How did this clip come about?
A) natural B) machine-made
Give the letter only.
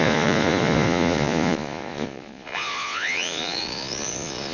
B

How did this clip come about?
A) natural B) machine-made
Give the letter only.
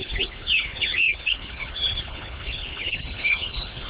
B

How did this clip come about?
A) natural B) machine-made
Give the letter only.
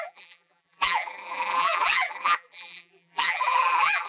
B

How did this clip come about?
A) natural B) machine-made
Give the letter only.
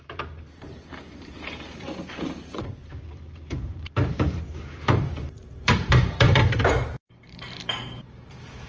B